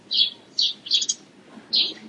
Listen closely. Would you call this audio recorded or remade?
recorded